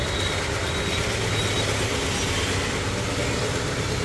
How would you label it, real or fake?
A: real